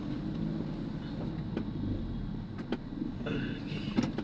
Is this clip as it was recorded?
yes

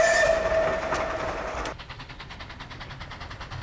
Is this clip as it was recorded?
yes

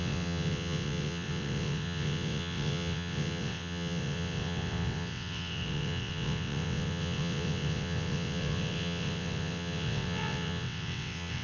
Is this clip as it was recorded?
no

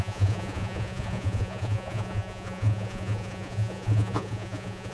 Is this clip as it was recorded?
no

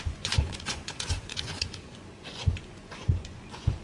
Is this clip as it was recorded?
no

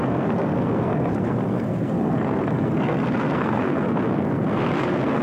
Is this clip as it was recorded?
no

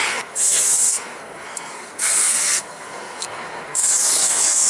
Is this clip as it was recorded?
no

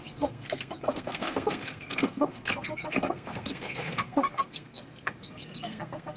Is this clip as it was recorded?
no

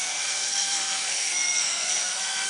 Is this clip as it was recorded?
no